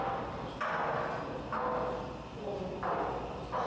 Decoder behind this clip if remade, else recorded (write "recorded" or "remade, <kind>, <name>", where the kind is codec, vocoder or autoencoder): recorded